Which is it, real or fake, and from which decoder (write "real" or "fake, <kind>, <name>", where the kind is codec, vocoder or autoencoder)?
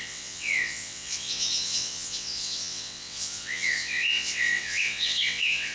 fake, vocoder, WaveNeXt